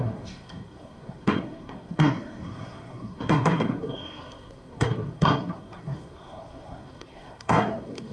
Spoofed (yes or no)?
yes